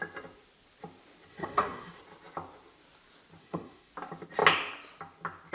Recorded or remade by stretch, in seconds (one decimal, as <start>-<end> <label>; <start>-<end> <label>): 0.0-1.3 recorded; 1.3-2.0 remade; 2.0-3.4 recorded; 3.4-3.9 remade; 3.9-5.5 recorded